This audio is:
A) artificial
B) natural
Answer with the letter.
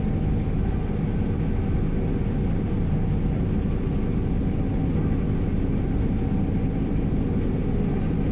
B